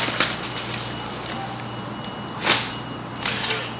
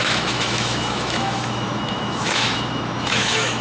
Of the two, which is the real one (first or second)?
first